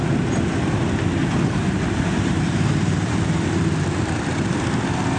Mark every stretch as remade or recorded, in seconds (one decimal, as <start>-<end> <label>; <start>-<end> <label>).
0.0-1.2 recorded; 1.2-4.3 remade; 4.3-5.2 recorded

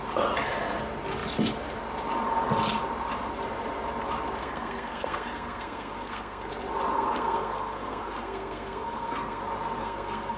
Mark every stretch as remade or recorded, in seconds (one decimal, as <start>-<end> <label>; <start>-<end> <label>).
0.0-4.4 recorded; 4.4-6.5 remade; 6.5-6.9 recorded; 6.9-9.4 remade; 9.4-9.8 recorded; 9.8-10.4 remade

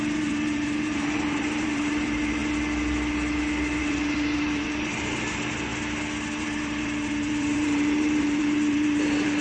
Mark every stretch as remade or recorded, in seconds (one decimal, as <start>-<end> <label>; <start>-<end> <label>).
0.0-2.4 remade; 2.4-3.8 recorded; 3.8-5.7 remade; 5.7-6.4 recorded; 6.4-9.4 remade

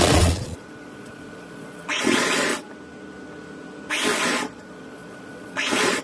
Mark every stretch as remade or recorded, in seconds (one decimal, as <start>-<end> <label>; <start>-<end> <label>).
0.0-2.5 remade; 2.5-4.2 recorded; 4.2-6.0 remade

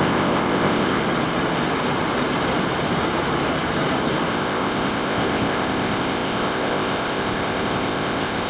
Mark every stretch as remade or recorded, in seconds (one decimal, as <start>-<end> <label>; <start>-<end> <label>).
0.0-1.0 remade; 1.0-4.3 recorded; 4.3-8.5 remade

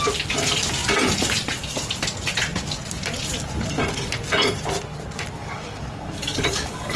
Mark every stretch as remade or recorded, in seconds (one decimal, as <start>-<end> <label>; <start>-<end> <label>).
0.0-5.4 recorded; 5.4-7.0 remade

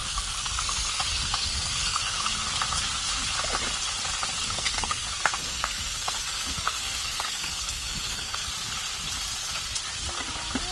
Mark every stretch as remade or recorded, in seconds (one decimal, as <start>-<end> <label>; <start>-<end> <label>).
0.0-2.3 remade; 2.3-4.4 recorded; 4.4-8.5 remade; 8.5-10.7 recorded

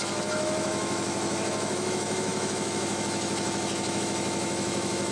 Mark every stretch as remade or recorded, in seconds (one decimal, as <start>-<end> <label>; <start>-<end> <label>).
0.0-5.1 remade